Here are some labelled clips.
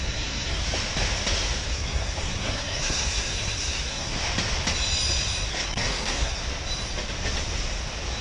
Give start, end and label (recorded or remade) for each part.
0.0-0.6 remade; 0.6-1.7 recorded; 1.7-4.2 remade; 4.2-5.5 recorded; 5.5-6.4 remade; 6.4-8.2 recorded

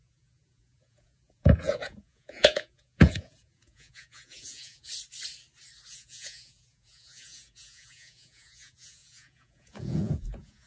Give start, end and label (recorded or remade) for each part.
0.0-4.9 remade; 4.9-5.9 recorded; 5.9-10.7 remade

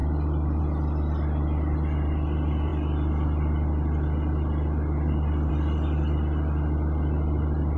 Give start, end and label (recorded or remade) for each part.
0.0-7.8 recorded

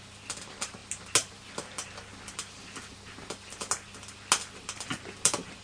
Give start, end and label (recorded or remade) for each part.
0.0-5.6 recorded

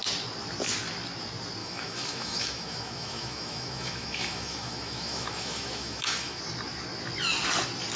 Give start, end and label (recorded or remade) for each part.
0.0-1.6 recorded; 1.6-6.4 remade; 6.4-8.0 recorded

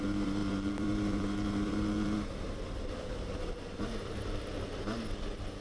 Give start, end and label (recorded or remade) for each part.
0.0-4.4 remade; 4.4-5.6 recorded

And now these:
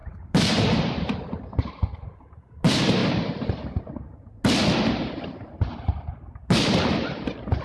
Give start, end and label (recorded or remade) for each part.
0.0-3.0 remade; 3.0-6.3 recorded; 6.3-7.6 remade